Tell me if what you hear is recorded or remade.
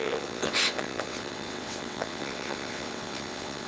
remade